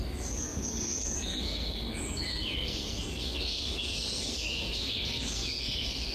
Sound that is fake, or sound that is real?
fake